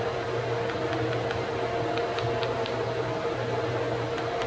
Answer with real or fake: real